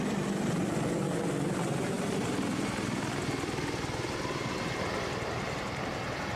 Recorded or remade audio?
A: recorded